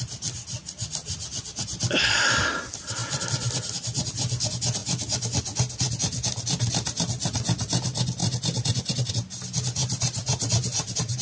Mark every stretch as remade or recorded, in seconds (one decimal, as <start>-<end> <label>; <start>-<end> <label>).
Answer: 0.0-9.8 recorded; 9.8-11.2 remade